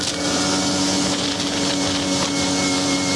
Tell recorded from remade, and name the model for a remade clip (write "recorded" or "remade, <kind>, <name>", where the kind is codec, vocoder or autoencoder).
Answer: recorded